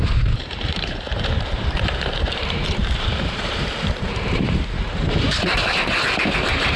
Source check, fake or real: fake